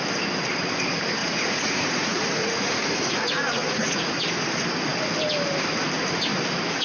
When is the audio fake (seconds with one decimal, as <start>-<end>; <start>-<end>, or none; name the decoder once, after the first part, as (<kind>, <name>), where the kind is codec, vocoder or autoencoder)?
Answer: 1.2-4.2 (vocoder, Vocos)